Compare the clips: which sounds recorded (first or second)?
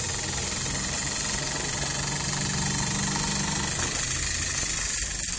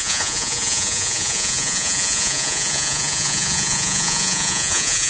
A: first